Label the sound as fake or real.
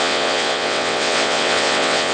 fake